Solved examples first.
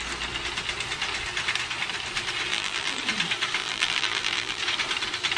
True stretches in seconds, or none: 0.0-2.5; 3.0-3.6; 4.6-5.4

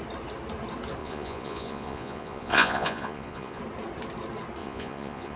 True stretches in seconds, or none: 0.0-1.0; 3.6-4.6